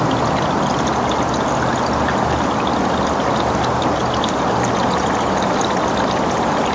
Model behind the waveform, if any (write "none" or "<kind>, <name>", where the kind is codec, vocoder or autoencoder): none